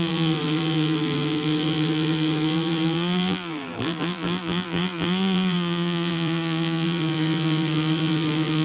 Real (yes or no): no